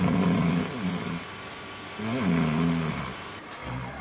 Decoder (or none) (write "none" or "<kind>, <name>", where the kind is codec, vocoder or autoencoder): none